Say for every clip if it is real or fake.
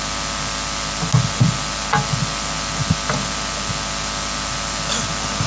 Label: real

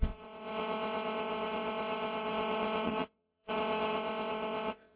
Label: fake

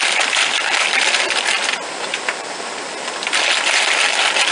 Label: fake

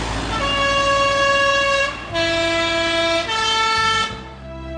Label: real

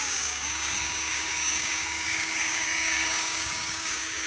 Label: fake